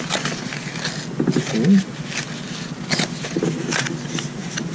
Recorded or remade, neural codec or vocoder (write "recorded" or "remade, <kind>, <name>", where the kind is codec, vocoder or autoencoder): recorded